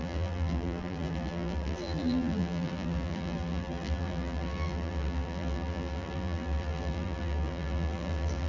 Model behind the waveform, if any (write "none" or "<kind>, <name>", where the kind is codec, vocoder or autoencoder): vocoder, BigVGAN v2